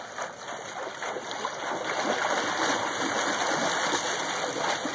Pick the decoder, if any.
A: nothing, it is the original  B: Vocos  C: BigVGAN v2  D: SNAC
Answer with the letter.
A